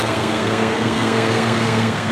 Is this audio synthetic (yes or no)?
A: yes